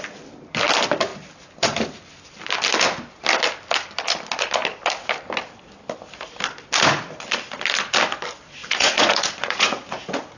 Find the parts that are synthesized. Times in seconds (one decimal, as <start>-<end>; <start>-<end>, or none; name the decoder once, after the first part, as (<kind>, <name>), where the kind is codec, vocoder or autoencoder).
8.6-10.4 (vocoder, Vocos)